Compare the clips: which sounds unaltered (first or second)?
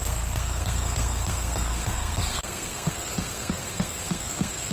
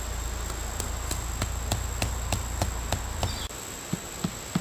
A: second